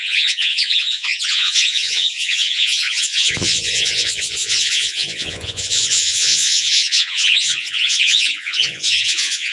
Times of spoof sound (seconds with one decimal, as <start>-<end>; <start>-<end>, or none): 0.0-9.5